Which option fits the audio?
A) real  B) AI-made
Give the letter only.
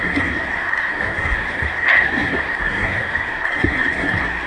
B